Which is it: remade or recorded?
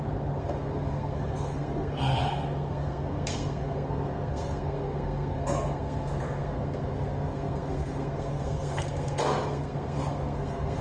remade